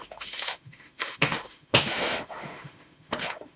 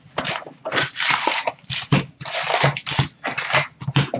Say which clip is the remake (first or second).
first